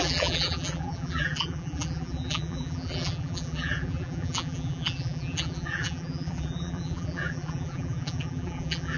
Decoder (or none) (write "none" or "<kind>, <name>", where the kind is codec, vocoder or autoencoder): vocoder, BigVGAN v2